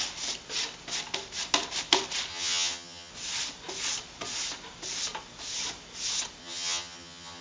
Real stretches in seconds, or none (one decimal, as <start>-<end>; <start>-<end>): 0.0-2.3; 3.1-6.4